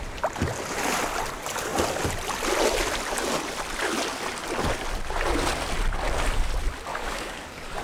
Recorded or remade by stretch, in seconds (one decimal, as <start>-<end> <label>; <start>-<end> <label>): 0.0-6.9 recorded; 6.9-7.8 remade